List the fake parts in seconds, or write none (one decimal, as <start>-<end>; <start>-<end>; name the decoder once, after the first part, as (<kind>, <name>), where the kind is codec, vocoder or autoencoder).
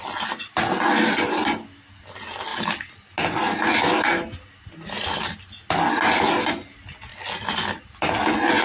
none